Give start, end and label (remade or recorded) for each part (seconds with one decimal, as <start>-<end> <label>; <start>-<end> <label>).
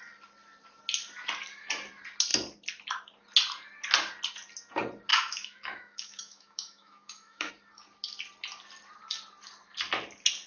0.0-5.1 recorded; 5.1-7.5 remade; 7.5-10.5 recorded